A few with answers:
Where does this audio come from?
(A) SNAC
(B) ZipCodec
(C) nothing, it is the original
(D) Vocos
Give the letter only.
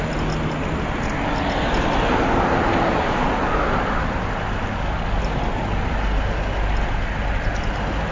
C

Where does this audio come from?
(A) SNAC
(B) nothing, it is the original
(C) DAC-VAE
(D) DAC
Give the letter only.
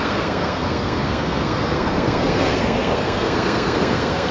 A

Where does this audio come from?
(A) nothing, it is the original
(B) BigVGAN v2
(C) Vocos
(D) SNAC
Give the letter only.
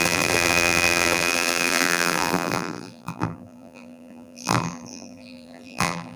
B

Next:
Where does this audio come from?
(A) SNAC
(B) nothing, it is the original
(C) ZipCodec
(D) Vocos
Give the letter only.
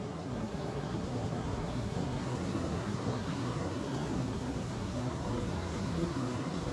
A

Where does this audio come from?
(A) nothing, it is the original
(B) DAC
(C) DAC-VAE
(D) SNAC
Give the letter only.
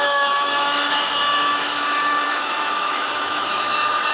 C